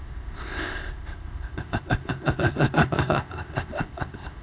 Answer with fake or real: fake